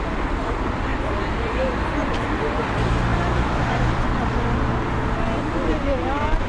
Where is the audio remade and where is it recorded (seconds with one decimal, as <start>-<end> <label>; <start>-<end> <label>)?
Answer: 0.0-3.1 recorded; 3.1-4.1 remade; 4.1-6.5 recorded